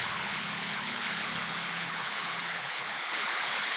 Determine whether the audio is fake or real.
fake